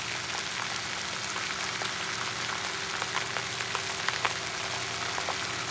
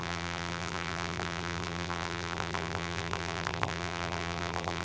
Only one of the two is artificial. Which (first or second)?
second